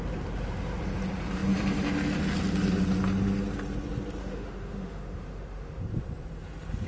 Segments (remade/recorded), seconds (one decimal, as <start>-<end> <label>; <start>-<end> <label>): 0.0-4.2 recorded; 4.2-5.8 remade; 5.8-6.9 recorded